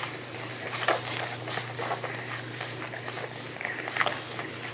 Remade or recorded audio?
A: recorded